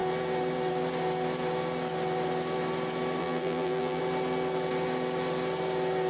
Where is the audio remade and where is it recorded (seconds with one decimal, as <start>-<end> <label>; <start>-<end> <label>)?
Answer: 0.0-3.2 recorded; 3.2-4.0 remade; 4.0-6.1 recorded